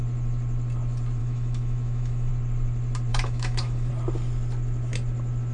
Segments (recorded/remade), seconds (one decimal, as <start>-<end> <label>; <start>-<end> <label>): 0.0-1.2 recorded; 1.2-2.3 remade; 2.3-3.1 recorded; 3.1-3.9 remade; 3.9-5.5 recorded